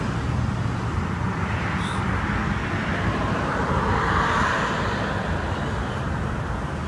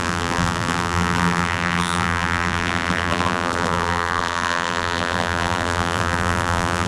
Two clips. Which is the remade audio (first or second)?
second